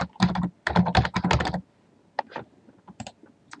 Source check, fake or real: real